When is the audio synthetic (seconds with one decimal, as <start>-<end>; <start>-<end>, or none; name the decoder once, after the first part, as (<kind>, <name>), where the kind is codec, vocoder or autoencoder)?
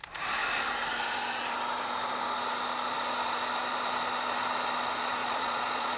5.2-6.0 (vocoder, Vocos)